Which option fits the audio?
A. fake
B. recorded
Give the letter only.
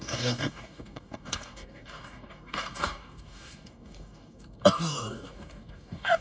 A